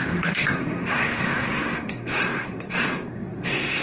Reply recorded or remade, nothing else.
remade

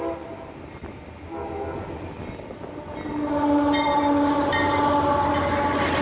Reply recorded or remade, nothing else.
recorded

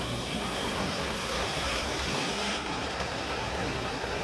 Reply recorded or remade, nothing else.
remade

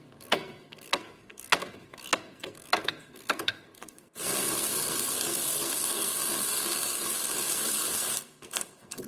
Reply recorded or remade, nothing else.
remade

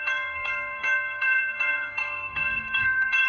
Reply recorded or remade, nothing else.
remade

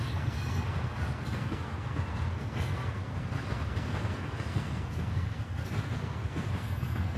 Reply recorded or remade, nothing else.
remade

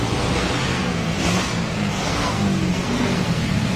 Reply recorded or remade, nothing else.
remade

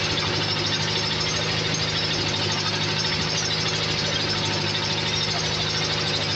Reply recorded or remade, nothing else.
recorded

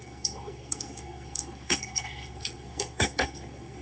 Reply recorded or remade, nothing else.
remade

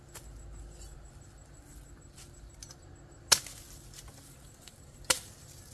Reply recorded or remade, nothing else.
recorded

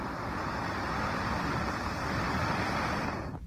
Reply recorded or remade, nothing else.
recorded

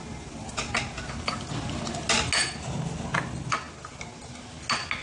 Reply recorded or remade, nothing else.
recorded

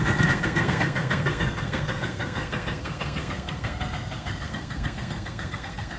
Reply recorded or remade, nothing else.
remade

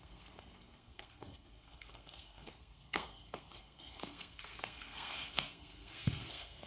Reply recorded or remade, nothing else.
remade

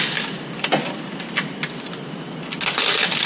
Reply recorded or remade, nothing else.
recorded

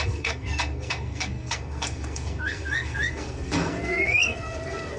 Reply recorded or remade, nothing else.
remade